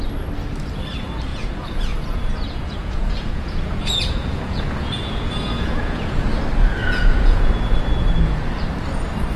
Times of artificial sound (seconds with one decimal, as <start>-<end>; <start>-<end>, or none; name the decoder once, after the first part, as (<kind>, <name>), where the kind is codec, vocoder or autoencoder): 1.3-6.2 (vocoder, Vocos); 6.8-7.5